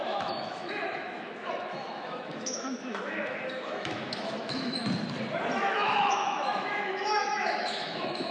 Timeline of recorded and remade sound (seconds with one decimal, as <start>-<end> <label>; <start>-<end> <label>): 0.0-4.8 remade; 4.8-5.6 recorded; 5.6-8.3 remade